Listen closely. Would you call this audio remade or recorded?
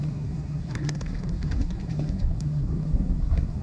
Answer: remade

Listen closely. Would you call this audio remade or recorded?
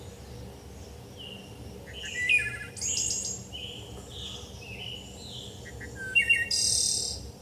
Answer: recorded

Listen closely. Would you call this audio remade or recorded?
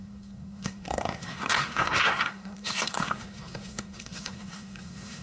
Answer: remade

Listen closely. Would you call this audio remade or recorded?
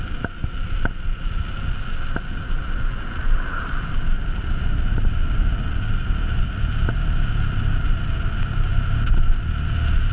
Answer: recorded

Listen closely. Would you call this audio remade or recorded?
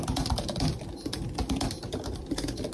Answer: recorded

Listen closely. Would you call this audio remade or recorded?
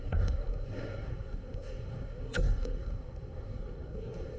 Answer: remade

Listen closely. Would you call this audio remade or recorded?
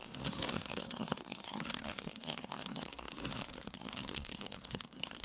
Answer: remade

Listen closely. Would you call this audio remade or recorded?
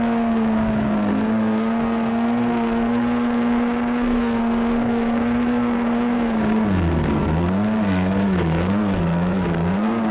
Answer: remade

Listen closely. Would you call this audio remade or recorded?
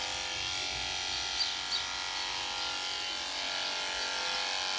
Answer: recorded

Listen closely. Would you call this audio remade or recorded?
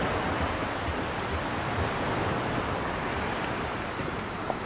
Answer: recorded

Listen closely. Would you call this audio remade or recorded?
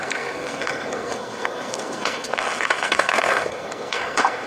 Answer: remade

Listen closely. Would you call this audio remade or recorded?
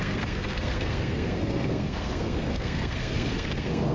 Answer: remade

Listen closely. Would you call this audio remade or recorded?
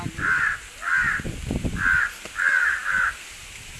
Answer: recorded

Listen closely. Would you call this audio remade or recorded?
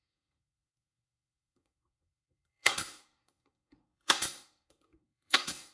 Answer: remade